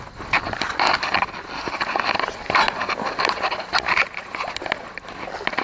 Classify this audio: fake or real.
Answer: real